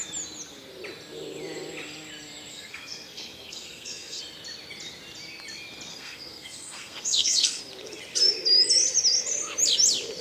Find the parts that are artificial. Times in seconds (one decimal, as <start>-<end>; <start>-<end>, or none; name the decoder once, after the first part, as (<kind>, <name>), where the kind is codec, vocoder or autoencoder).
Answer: 2.5-4.2 (codec, SNAC); 5.9-7.6